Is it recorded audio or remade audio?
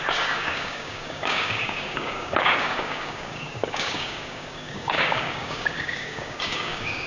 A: remade